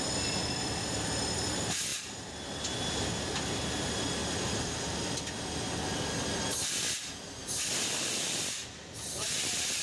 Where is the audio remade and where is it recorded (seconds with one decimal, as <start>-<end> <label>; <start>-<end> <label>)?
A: 0.0-9.8 recorded